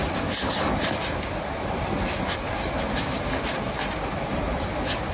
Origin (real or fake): real